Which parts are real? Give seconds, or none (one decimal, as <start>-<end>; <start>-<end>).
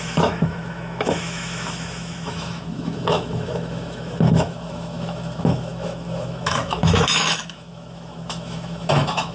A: none